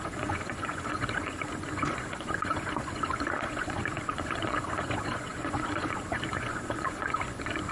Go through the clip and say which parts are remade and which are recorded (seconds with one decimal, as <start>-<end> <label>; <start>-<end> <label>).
0.0-7.7 remade